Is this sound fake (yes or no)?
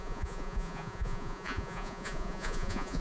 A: yes